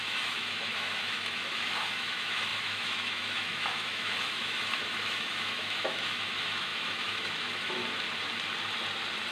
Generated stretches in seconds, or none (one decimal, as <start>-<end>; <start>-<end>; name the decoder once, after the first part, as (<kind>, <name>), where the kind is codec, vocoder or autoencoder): 0.0-7.8 (autoencoder, DAC-VAE)